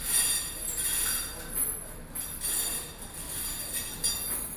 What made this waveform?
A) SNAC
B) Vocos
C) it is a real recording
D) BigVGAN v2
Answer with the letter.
C